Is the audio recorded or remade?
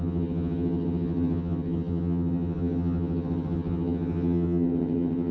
remade